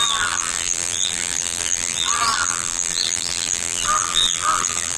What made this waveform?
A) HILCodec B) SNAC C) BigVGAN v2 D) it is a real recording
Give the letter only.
C